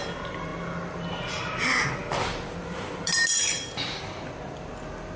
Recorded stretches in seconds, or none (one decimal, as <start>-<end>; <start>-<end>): 0.0-5.2